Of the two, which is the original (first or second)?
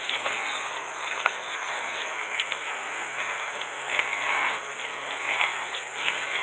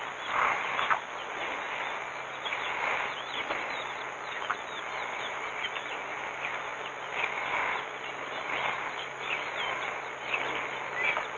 second